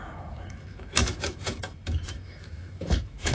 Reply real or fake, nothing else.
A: fake